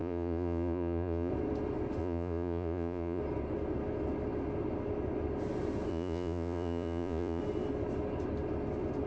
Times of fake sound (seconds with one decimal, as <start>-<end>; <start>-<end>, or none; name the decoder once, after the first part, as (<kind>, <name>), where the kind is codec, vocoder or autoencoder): 0.0-1.3 (vocoder, Vocos); 2.0-3.2; 5.9-7.4

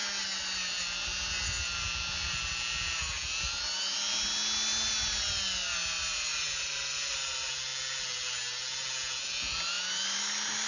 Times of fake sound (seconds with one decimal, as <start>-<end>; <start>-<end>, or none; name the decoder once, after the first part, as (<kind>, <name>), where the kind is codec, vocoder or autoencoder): none